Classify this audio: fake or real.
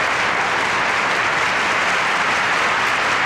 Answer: real